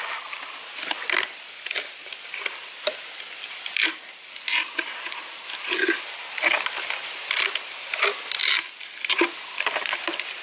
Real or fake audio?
real